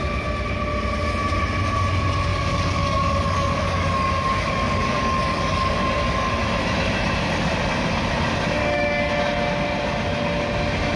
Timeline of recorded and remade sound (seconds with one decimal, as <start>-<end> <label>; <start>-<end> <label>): 0.0-2.3 recorded; 2.3-6.3 remade; 6.3-8.6 recorded; 8.6-9.1 remade; 9.1-11.0 recorded